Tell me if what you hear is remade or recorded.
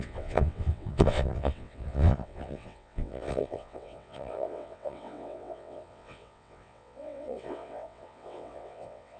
remade